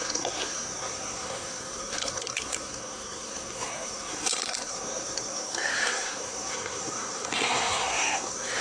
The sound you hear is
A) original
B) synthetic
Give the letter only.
B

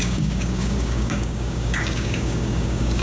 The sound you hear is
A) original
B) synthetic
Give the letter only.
B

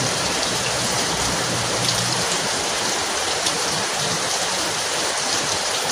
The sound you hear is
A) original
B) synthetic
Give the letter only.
B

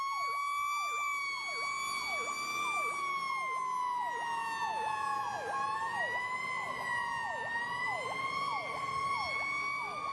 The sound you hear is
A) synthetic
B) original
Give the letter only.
B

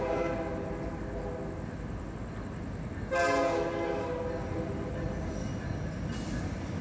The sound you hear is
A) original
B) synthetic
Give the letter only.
A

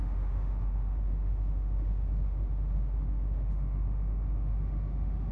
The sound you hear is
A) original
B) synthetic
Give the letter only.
B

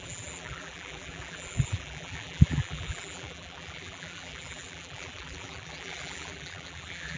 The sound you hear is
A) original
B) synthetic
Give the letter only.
B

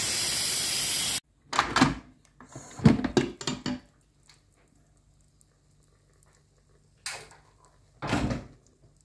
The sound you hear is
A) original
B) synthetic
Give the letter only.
A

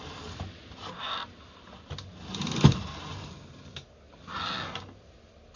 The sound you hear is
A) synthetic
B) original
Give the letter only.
B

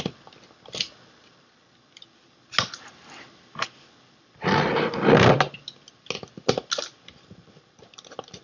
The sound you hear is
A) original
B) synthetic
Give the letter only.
A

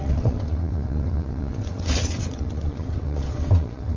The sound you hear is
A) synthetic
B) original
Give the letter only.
A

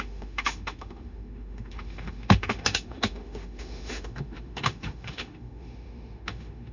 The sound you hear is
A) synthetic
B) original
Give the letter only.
A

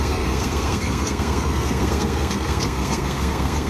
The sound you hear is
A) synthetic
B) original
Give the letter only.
A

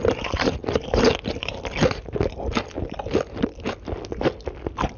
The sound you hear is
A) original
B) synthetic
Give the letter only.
A